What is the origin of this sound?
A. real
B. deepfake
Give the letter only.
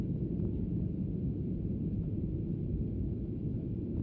B